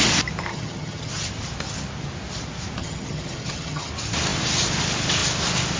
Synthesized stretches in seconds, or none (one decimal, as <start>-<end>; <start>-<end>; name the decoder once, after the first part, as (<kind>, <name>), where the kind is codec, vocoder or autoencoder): 0.5-1.1 (vocoder, HiFi-GAN); 2.8-3.9